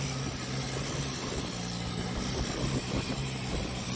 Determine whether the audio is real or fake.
real